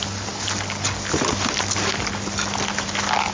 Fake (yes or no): no